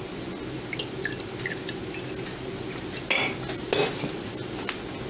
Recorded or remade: recorded